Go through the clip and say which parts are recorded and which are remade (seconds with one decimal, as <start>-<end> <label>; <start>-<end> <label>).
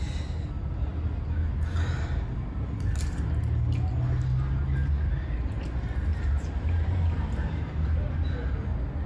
0.0-6.1 recorded; 6.1-8.1 remade; 8.1-9.1 recorded